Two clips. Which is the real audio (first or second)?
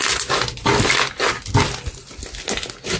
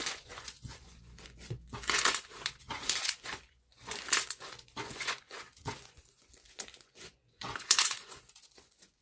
first